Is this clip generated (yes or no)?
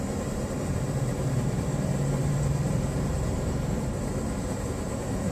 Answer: yes